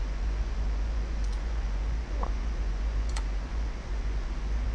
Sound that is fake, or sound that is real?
fake